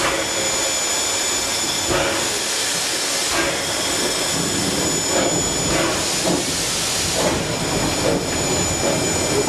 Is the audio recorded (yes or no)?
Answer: yes